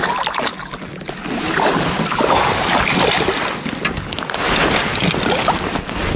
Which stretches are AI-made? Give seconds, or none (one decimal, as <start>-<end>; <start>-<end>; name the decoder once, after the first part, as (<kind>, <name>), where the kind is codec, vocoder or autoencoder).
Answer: none